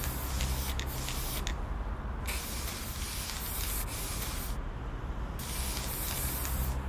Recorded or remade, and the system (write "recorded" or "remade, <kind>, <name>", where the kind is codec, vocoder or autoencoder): recorded